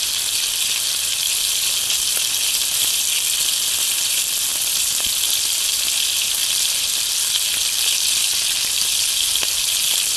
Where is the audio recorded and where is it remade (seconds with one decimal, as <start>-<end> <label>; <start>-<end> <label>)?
0.0-10.2 recorded